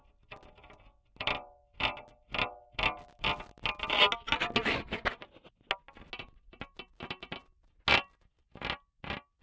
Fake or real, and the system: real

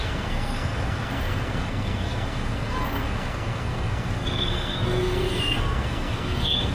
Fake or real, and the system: fake, codec, SNAC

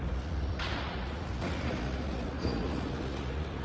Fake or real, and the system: fake, vocoder, Vocos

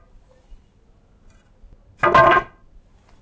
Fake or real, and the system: real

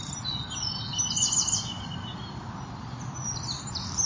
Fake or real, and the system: real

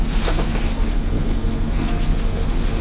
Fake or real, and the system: fake, codec, SNAC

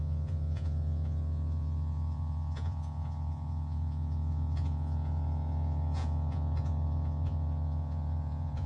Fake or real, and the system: fake, vocoder, Vocos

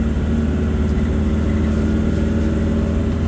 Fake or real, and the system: real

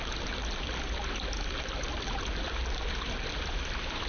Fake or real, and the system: real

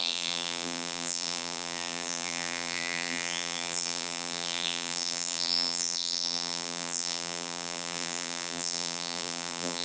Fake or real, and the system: fake, vocoder, BigVGAN v2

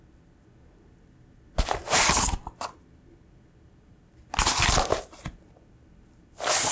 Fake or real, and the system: real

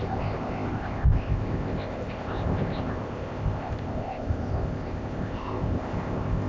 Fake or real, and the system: fake, codec, ZipCodec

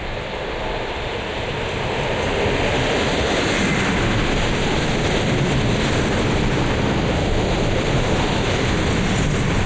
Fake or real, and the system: real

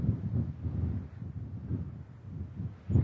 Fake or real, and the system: real